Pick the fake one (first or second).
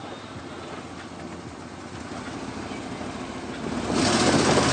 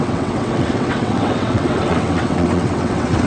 second